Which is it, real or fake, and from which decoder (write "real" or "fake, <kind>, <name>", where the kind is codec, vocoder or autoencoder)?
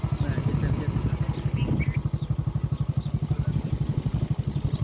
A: real